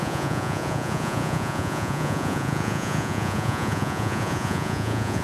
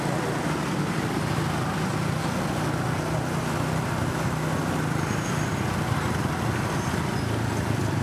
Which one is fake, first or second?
first